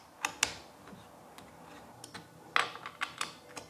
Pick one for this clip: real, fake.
real